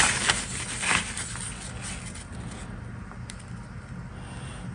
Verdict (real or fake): real